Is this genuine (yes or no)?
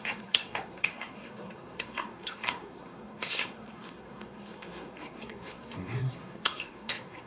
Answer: no